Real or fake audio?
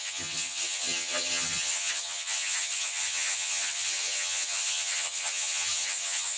fake